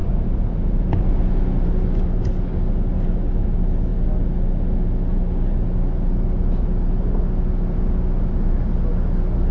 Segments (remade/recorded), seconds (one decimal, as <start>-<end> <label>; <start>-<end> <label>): 0.0-1.3 remade; 1.3-9.5 recorded